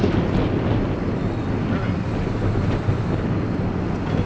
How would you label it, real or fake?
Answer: real